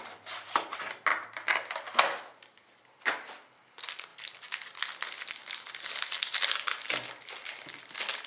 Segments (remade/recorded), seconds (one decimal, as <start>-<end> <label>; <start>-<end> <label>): 0.0-1.1 recorded; 1.1-1.7 remade; 1.7-8.3 recorded